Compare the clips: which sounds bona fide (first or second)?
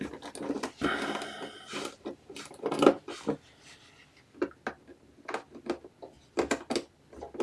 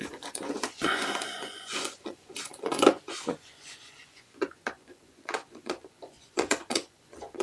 first